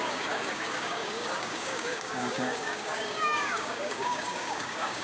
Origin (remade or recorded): remade